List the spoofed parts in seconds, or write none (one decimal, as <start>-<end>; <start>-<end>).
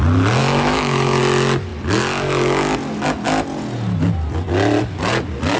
0.4-1.2